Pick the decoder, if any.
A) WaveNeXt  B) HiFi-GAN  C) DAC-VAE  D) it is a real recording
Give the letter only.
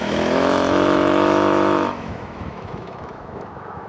C